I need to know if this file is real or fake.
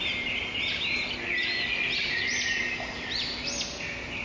real